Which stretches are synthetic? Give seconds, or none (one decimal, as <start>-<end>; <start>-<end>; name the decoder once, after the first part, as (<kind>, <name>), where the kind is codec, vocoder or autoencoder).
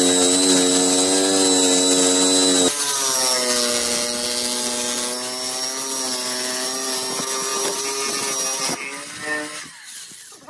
none